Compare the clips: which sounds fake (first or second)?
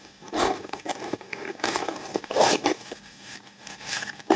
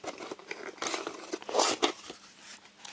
first